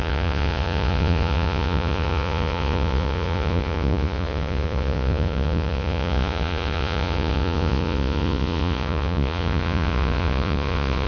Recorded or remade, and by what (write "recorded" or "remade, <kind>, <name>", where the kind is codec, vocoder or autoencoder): remade, vocoder, Vocos